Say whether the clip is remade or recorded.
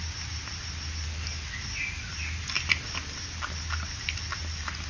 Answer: recorded